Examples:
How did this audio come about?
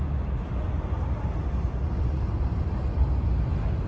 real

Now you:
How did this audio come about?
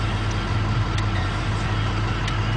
real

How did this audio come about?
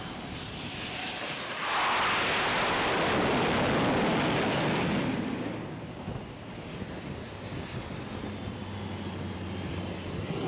real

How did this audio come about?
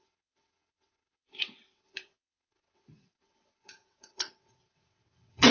fake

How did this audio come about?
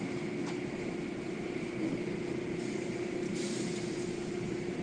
real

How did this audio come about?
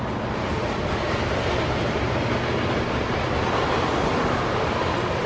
real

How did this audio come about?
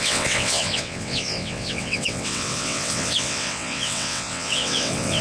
fake